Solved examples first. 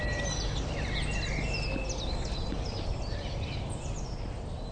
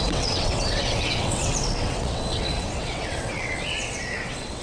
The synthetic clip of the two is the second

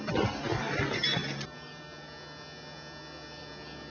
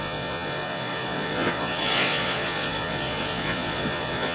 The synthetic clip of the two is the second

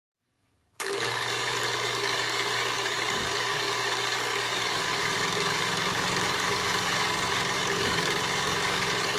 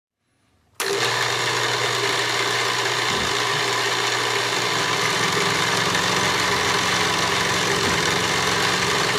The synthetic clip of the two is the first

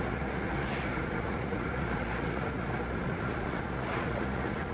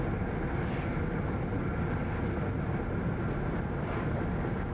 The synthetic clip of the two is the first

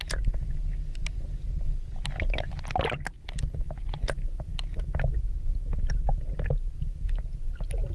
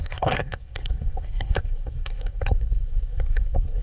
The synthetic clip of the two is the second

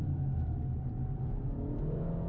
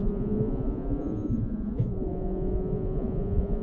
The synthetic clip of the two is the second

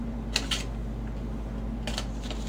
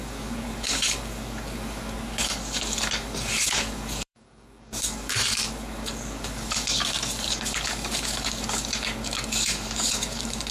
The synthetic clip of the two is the second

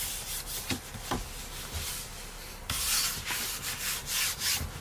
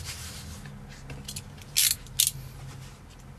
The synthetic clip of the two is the first